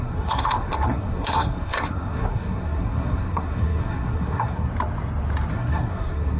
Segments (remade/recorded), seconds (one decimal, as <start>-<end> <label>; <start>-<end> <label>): 0.0-4.7 remade; 4.7-5.5 recorded; 5.5-6.4 remade